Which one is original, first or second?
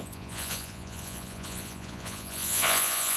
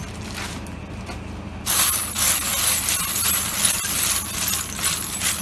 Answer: second